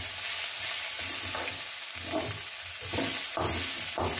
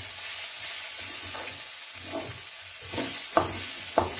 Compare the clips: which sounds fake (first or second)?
second